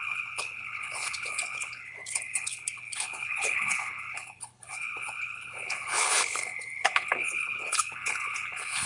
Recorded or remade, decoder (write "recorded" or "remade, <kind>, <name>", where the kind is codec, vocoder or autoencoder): remade, codec, HILCodec